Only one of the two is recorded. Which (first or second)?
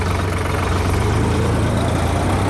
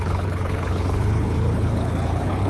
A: first